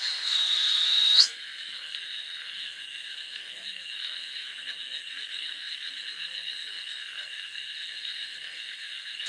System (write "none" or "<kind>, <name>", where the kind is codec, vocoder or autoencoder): codec, SNAC